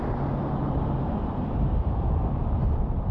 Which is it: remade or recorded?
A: remade